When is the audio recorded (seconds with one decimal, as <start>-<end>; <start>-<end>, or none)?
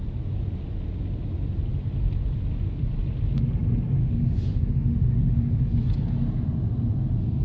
0.0-4.0; 5.6-7.4